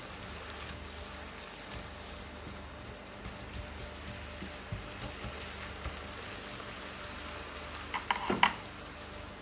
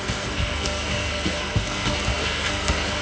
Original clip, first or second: first